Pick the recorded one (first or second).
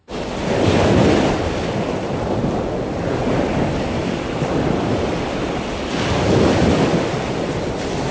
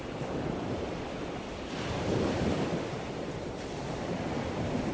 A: first